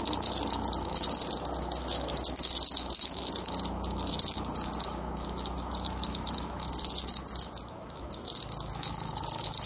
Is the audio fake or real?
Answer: fake